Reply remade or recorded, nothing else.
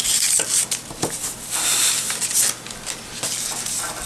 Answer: recorded